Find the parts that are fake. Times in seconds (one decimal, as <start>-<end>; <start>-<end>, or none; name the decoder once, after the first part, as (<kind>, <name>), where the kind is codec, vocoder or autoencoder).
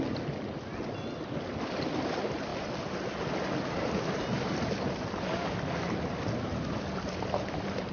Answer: none